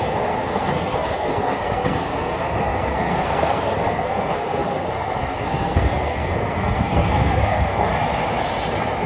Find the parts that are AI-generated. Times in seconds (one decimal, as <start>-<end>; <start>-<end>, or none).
0.0-7.9